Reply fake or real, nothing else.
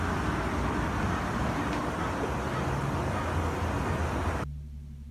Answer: real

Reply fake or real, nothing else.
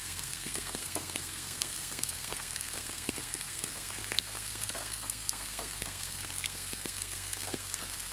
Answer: fake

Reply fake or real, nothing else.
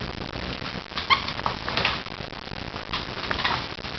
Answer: real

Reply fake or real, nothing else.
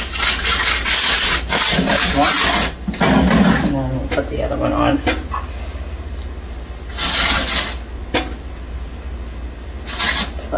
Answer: real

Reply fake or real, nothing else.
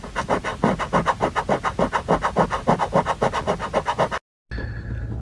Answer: real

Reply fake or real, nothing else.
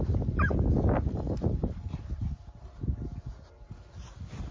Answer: real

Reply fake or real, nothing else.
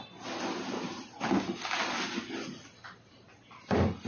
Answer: real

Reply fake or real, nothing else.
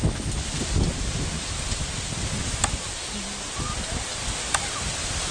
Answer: real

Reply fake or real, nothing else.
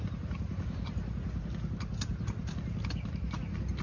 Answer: real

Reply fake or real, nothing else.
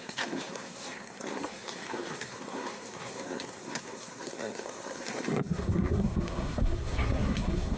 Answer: fake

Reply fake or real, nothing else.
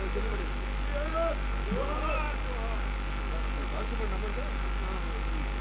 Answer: real